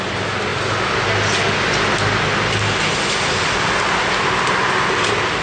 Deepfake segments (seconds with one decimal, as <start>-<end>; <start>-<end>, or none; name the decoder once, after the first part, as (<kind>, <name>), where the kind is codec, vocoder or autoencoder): none